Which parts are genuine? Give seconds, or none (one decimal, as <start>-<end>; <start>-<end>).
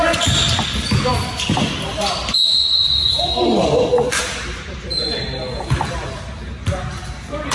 0.0-2.8